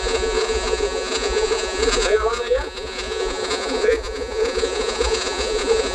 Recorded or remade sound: remade